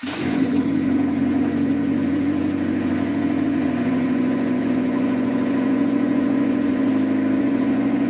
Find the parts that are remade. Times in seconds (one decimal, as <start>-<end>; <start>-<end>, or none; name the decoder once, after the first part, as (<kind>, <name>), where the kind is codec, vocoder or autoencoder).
0.0-6.9 (vocoder, Vocos); 7.4-8.1